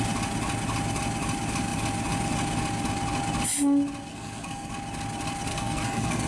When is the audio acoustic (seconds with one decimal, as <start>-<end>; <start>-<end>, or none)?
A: 0.0-4.1; 4.7-5.5